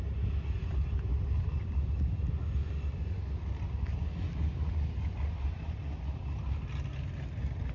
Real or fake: real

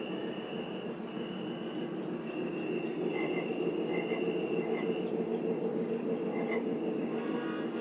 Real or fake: real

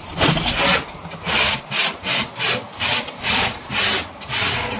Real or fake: real